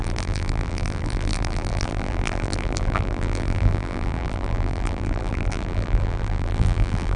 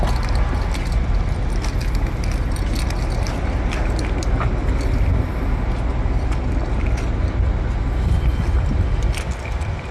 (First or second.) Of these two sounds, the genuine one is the second